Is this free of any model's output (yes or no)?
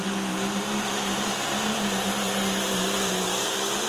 no